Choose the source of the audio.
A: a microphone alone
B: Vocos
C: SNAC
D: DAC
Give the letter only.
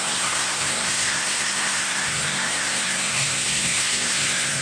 C